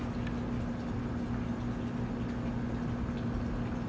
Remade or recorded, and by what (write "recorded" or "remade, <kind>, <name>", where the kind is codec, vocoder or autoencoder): recorded